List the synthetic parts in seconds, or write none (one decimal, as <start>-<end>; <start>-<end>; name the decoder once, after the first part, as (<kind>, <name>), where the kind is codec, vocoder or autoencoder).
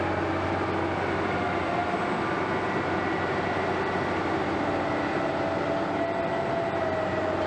none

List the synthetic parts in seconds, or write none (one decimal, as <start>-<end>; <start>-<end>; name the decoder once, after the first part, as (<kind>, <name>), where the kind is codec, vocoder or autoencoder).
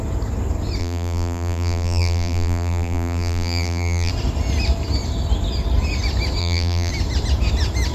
0.8-4.1 (vocoder, BigVGAN v2); 6.4-6.9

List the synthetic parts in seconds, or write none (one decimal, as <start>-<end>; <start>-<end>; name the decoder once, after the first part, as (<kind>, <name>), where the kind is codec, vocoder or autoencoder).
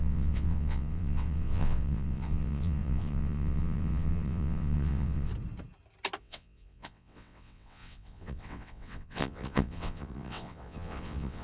0.0-5.3 (vocoder, WaveNeXt); 6.2-11.4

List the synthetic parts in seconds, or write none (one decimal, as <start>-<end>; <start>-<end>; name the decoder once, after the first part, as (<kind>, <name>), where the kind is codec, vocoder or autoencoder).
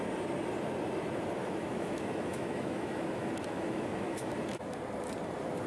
1.4-4.8 (autoencoder, DAC-VAE)